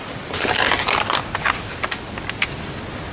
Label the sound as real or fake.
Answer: real